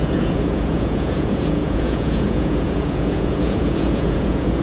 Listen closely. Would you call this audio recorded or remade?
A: remade